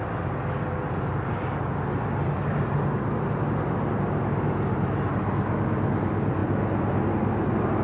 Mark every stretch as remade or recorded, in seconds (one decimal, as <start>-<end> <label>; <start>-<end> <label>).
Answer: 0.0-7.8 recorded